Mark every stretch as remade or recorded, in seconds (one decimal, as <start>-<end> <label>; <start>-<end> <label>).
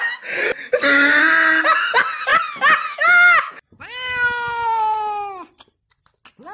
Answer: 0.0-6.5 recorded